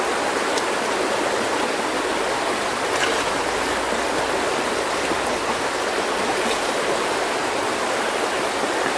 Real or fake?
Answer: real